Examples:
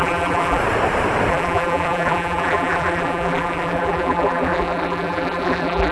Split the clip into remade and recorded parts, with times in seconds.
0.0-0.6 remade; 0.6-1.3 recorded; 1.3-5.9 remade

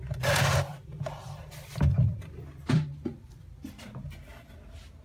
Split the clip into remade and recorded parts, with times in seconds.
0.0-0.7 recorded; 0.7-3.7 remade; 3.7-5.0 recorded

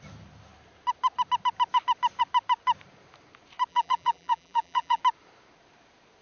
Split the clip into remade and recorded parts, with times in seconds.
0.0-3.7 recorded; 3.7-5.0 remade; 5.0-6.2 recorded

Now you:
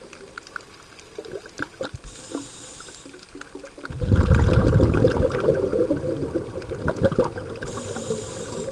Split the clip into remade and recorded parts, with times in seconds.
0.0-8.7 recorded